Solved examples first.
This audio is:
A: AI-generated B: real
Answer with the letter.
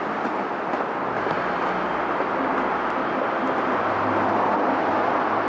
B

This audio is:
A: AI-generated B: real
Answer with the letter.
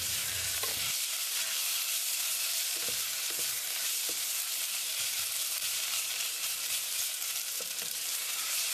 A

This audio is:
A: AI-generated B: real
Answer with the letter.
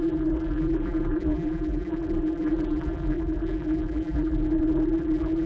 A